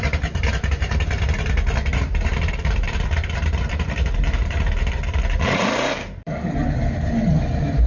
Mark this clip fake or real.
fake